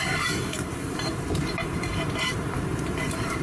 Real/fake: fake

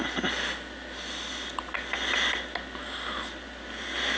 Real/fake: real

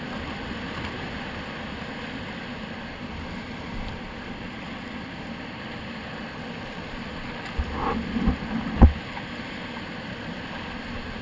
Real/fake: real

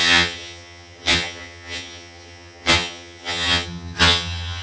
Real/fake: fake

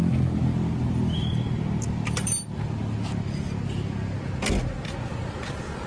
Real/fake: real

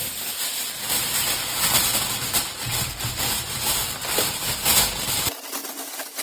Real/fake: fake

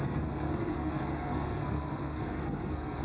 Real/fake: fake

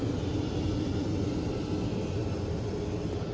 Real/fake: real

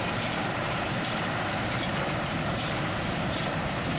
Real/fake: fake